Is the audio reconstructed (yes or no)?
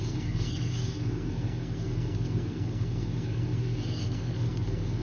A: yes